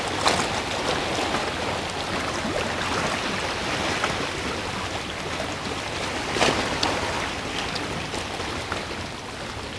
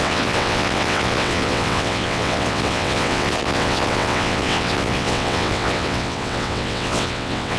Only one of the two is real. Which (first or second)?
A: first